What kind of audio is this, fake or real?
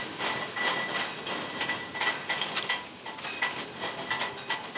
real